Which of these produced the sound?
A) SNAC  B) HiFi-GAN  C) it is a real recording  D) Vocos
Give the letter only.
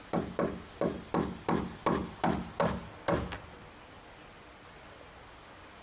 C